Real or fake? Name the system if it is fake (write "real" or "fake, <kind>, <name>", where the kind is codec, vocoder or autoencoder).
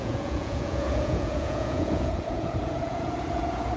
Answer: fake, vocoder, Vocos